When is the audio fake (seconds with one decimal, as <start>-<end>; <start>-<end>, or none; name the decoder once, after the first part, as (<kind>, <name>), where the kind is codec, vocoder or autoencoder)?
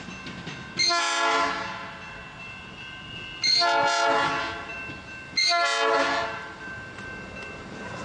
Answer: none